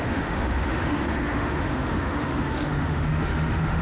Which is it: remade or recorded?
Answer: remade